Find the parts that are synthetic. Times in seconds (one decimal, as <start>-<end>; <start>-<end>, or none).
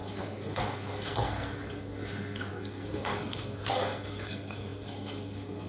0.0-5.7